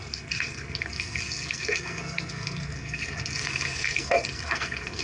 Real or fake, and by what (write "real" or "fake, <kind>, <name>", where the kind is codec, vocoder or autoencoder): fake, codec, SNAC